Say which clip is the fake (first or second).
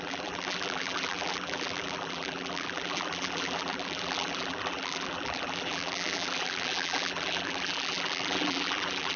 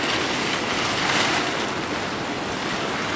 first